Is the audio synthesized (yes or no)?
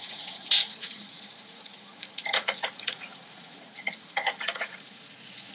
yes